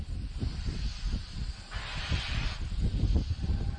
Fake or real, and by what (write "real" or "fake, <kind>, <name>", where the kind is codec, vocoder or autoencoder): fake, vocoder, BigVGAN v2